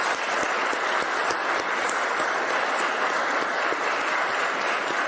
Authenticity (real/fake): real